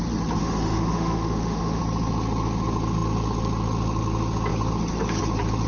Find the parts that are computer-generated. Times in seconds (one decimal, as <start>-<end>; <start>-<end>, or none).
0.4-1.8